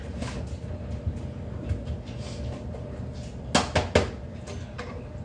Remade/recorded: recorded